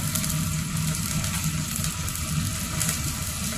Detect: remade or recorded recorded